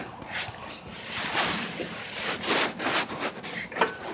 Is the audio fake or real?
real